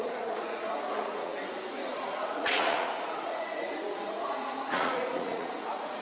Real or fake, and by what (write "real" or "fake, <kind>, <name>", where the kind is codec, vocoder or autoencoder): fake, vocoder, Vocos